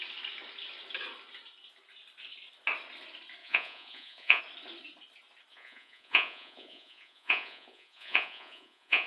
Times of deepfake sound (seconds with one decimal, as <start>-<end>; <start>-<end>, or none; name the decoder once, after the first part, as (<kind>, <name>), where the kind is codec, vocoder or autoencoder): 3.4-4.4 (vocoder, Vocos); 5.5-9.1